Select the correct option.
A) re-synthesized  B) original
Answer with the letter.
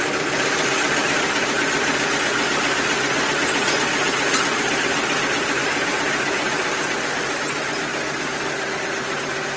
B